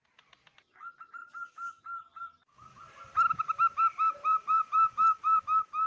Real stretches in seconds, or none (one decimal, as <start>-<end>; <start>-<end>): 0.0-1.2; 2.2-4.2; 5.4-5.9